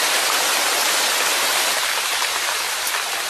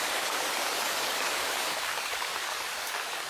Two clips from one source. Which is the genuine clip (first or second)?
first